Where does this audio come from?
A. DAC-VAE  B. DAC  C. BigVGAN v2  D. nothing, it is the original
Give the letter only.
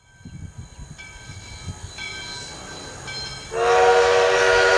D